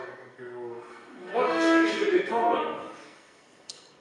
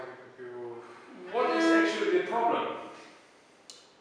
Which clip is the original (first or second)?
second